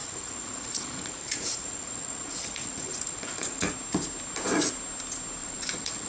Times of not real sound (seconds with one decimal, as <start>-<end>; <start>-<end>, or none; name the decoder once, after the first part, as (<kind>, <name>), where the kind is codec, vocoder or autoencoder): 0.0-3.7 (vocoder, Vocos); 5.4-6.1